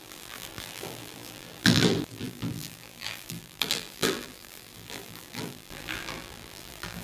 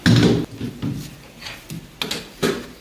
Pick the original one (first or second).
second